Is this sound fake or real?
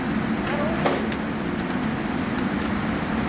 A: real